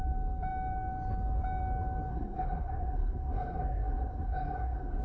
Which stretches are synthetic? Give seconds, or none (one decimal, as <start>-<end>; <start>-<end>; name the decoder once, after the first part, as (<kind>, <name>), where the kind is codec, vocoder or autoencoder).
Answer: 2.1-5.0 (codec, SNAC)